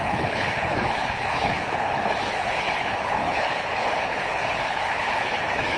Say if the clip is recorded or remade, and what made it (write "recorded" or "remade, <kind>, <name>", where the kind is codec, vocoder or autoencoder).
remade, codec, HILCodec